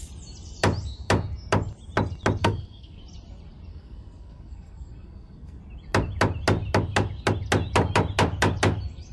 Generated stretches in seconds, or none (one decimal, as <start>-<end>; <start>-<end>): 2.4-3.0; 3.7-5.6